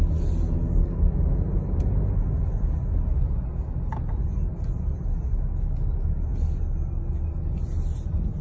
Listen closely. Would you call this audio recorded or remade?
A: recorded